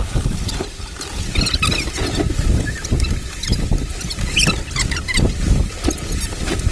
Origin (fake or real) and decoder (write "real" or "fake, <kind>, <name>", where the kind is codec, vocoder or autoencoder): real